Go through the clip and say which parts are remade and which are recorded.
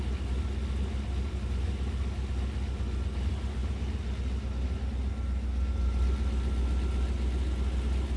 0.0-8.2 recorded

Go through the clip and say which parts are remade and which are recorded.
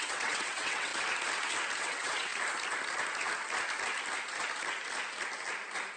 0.0-0.9 remade; 0.9-1.8 recorded; 1.8-2.3 remade; 2.3-6.0 recorded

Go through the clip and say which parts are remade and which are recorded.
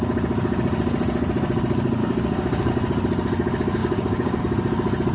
0.0-2.0 recorded; 2.0-2.7 remade; 2.7-3.8 recorded; 3.8-4.4 remade; 4.4-5.1 recorded